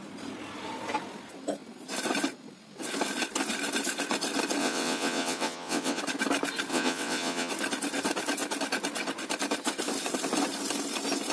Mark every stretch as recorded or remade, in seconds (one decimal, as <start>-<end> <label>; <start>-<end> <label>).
0.0-4.6 recorded; 4.6-6.0 remade; 6.0-6.7 recorded; 6.7-7.5 remade; 7.5-11.3 recorded